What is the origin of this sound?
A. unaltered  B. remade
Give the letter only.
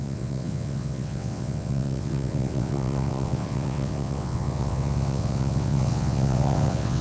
B